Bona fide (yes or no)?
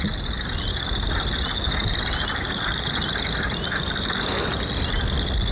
yes